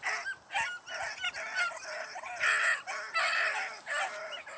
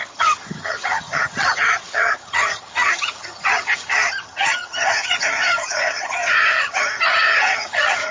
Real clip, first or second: first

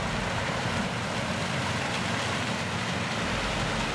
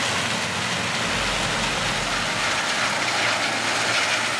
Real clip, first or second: second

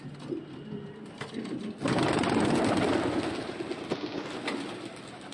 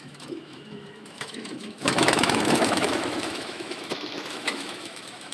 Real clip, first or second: first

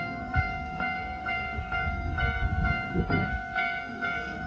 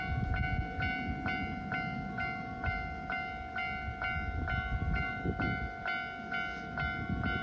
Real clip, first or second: second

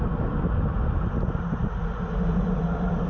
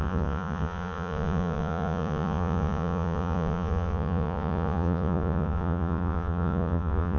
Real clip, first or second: first